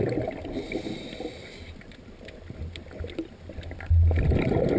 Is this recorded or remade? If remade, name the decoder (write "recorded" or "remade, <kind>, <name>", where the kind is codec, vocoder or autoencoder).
recorded